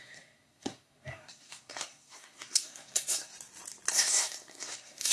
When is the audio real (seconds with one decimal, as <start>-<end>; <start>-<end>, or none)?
3.3-3.9